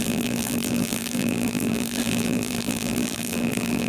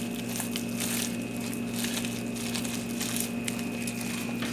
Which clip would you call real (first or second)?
second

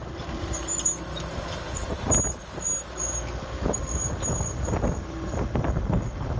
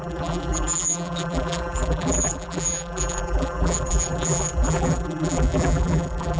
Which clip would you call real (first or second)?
first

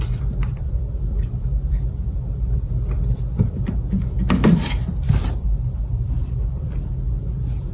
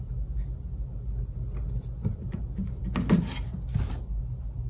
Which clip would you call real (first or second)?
second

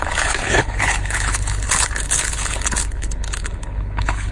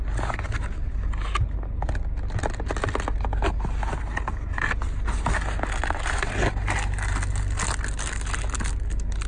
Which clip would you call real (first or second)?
second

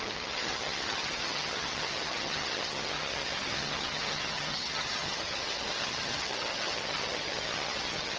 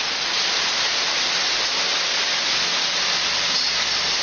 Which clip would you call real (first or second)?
second